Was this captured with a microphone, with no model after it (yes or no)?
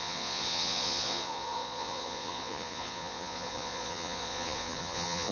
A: no